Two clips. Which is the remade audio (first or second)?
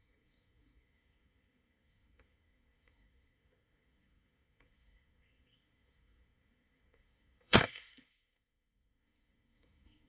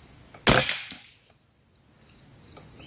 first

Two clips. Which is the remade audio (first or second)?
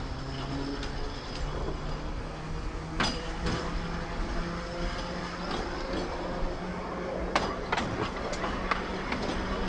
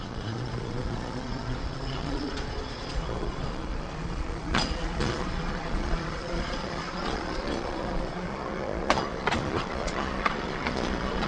second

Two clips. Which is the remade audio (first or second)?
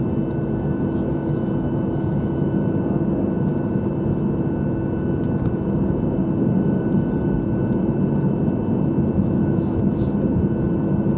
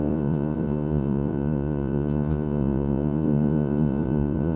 second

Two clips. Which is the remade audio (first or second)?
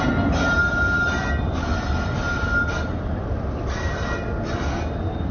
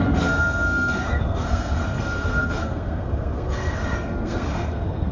second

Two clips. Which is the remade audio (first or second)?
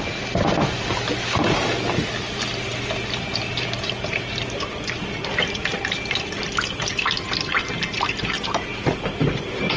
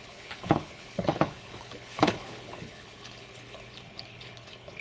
second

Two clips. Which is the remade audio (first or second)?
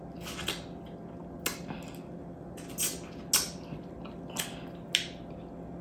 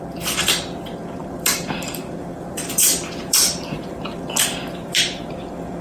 second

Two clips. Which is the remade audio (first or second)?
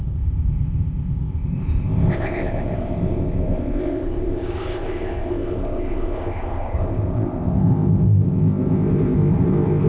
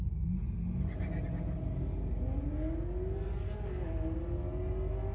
first